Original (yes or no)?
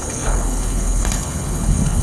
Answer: no